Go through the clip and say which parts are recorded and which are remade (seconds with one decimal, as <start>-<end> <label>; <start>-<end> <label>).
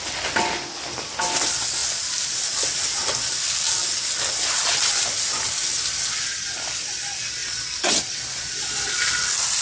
0.0-9.6 recorded